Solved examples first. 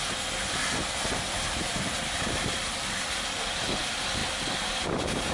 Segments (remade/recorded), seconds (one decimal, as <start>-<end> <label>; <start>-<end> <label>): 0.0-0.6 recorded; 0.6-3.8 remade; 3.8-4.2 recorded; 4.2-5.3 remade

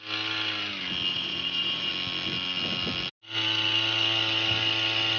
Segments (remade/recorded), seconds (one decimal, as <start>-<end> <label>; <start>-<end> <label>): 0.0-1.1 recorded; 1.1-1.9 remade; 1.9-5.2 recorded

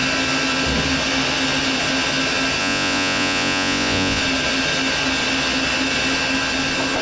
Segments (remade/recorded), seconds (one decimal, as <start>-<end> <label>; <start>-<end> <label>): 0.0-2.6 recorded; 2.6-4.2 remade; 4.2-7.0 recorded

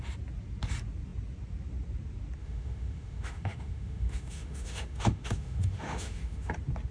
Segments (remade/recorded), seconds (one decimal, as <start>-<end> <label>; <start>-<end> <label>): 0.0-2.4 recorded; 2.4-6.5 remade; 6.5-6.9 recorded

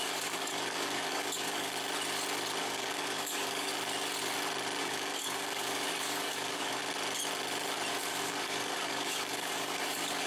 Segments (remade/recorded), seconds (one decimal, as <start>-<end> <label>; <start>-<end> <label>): 0.0-1.7 remade; 1.7-2.6 recorded; 2.6-3.7 remade; 3.7-4.8 recorded; 4.8-6.8 remade; 6.8-7.9 recorded; 7.9-10.3 remade